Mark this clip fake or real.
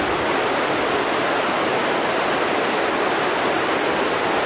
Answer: real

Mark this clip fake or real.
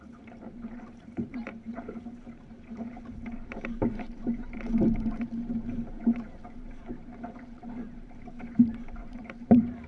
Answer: fake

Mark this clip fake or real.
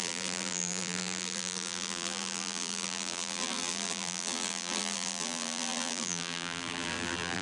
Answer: fake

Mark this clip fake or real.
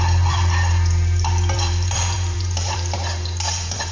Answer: fake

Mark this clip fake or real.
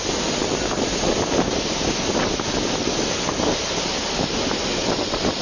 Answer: real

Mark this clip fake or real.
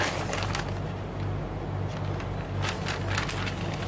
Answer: real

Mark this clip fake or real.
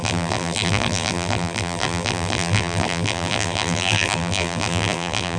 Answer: fake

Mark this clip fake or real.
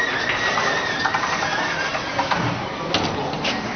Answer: real